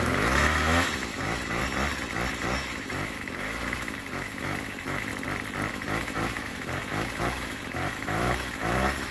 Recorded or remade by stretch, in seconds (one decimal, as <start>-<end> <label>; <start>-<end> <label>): 0.0-1.6 remade; 1.6-2.3 recorded; 2.3-5.1 remade; 5.1-5.7 recorded; 5.7-9.1 remade